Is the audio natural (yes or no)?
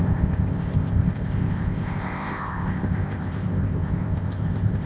no